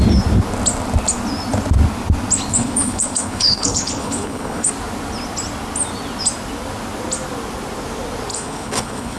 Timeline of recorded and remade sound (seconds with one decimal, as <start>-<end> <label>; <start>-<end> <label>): 0.0-2.5 recorded; 2.5-4.7 remade; 4.7-8.3 recorded; 8.3-9.2 remade